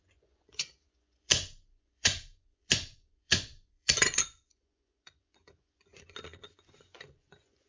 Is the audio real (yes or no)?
no